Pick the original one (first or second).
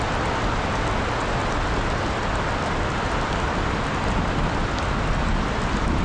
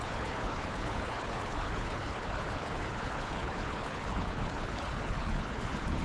first